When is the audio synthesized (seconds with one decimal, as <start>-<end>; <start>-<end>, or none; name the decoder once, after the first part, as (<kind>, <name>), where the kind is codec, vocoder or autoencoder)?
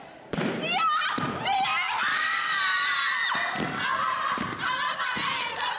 2.1-2.6 (codec, DAC)